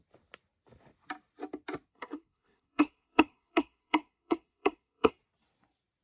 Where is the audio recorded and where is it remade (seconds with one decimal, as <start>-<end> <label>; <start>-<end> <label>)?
0.0-1.9 recorded; 1.9-5.1 remade; 5.1-6.0 recorded